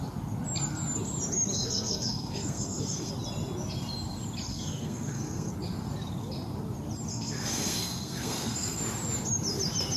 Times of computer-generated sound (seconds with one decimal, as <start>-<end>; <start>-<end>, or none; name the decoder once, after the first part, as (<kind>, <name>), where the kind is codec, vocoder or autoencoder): 1.5-3.1 (codec, SNAC); 4.5-5.5; 7.1-8.8